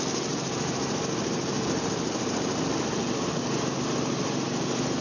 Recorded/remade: remade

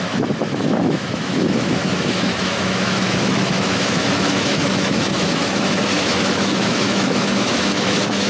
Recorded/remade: remade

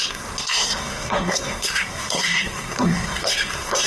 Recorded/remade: remade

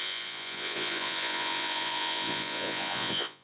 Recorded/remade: remade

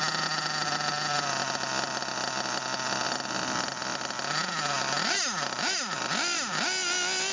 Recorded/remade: recorded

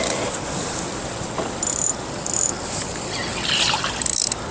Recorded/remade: recorded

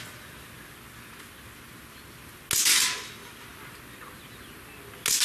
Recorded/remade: recorded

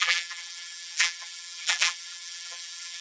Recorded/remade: remade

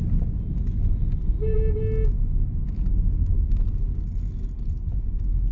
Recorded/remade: recorded